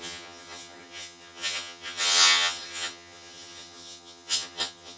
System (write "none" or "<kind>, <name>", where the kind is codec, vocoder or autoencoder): vocoder, HiFi-GAN